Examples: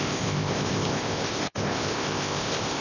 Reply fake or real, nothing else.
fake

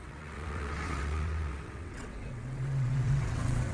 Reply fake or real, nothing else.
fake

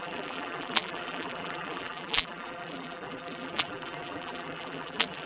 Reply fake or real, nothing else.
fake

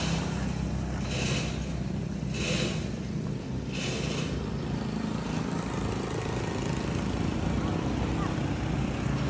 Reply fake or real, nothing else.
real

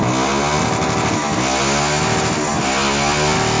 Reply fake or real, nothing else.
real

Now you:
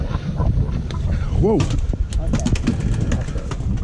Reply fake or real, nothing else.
real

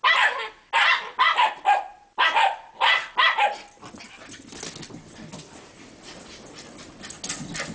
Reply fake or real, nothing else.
real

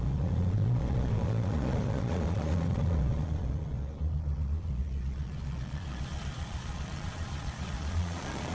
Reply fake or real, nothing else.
fake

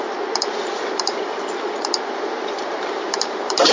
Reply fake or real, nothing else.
fake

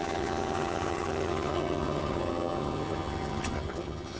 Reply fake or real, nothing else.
fake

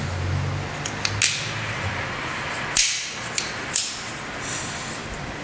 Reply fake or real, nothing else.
real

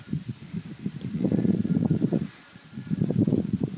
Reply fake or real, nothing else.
fake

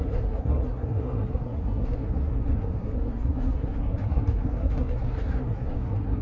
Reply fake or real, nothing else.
fake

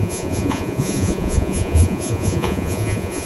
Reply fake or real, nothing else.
fake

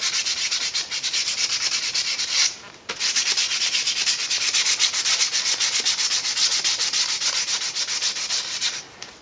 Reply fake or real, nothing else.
real